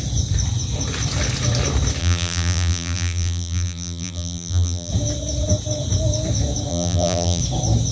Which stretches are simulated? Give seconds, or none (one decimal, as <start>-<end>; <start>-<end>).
2.0-4.9; 6.7-7.4